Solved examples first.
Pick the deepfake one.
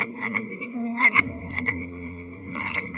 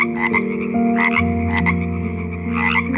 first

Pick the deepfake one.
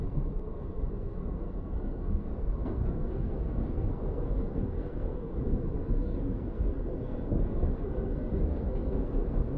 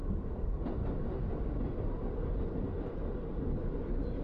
first